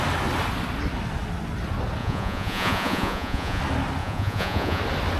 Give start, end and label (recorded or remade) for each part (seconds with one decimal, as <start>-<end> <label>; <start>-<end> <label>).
0.0-2.0 recorded; 2.0-3.6 remade; 3.6-4.0 recorded; 4.0-4.8 remade; 4.8-5.2 recorded